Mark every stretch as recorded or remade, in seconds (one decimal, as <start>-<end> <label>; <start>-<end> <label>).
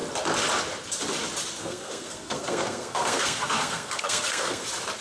0.0-1.6 recorded; 1.6-4.6 remade; 4.6-5.0 recorded